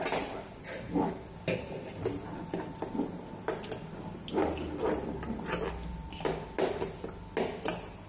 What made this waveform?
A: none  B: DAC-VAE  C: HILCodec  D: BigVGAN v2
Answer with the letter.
A